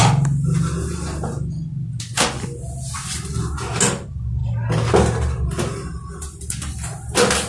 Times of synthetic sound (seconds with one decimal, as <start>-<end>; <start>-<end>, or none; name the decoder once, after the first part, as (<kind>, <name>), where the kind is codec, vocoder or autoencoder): none